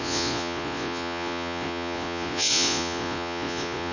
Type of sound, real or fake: fake